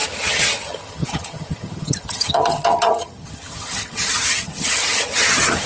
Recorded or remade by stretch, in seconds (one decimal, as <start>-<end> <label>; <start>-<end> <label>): 0.0-5.7 remade

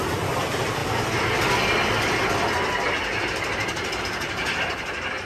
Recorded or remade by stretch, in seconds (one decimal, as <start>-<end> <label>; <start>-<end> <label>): 0.0-5.3 recorded

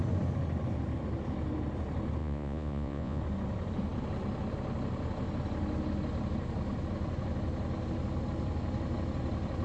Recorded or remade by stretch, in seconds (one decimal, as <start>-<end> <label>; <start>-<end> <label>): 0.0-2.2 recorded; 2.2-3.2 remade; 3.2-9.6 recorded

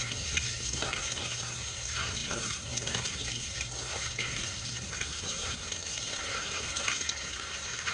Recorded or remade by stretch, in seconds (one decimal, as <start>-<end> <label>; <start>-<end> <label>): 0.0-7.9 remade